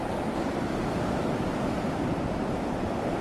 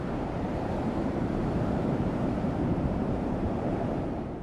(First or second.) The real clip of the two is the first